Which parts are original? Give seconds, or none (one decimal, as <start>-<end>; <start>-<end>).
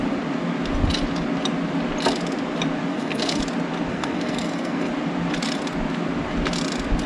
0.0-2.9; 3.4-3.9; 4.9-7.1